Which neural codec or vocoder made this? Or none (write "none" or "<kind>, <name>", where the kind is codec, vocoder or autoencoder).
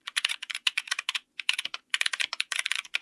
vocoder, Vocos